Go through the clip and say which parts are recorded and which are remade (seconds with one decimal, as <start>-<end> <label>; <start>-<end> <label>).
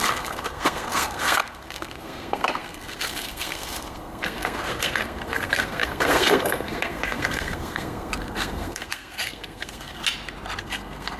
0.0-10.0 remade; 10.0-10.6 recorded; 10.6-11.2 remade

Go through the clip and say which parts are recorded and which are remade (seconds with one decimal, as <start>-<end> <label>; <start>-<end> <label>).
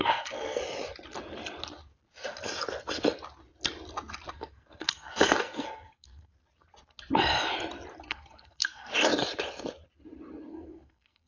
0.0-0.6 remade; 0.6-4.3 recorded; 4.3-6.3 remade; 6.3-8.1 recorded; 8.1-8.9 remade; 8.9-10.5 recorded; 10.5-11.3 remade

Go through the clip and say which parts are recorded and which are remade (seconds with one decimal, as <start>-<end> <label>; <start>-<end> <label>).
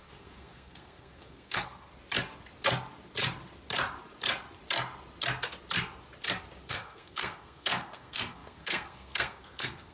0.0-1.9 remade; 1.9-6.7 recorded; 6.7-9.9 remade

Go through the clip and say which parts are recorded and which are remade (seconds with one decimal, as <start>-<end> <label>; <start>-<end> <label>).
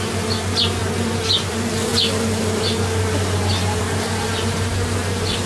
0.0-5.5 recorded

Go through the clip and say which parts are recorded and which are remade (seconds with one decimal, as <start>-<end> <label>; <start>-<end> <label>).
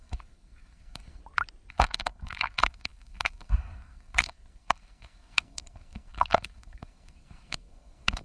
0.0-1.2 remade; 1.2-1.7 recorded; 1.7-8.2 remade